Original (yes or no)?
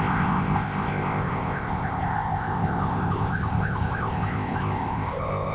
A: no